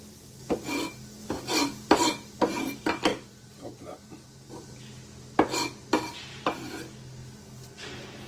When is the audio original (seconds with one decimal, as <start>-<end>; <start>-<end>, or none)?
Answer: 0.0-3.1; 4.5-5.9; 6.4-8.3